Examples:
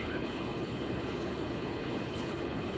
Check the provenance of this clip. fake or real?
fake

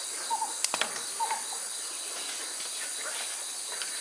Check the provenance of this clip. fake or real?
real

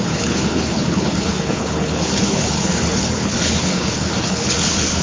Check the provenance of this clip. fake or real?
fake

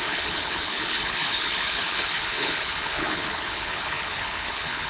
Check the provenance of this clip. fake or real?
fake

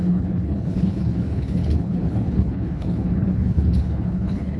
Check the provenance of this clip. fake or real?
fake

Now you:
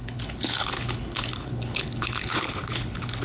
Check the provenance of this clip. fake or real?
fake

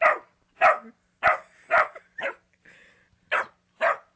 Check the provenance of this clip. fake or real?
real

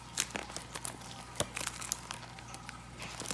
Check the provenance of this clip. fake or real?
real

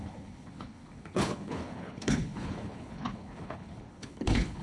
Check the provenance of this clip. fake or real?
fake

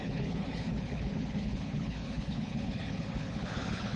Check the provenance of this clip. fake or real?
fake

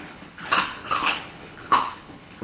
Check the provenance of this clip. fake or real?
fake